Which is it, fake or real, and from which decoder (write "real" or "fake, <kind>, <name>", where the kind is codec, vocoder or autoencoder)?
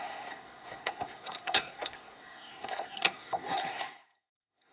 fake, codec, SNAC